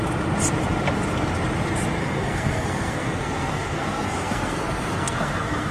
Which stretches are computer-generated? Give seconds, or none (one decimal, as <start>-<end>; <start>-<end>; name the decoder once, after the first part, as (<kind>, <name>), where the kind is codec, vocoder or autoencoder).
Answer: 2.0-5.7 (codec, SNAC)